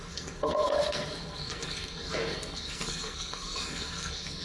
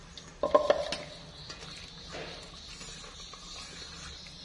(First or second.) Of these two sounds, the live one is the second